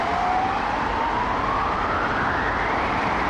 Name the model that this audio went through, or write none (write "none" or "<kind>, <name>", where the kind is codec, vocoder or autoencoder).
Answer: none